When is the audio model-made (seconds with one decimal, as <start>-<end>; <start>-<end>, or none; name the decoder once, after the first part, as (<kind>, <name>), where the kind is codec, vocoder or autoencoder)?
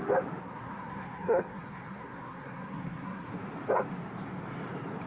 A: 0.4-3.3 (codec, SNAC)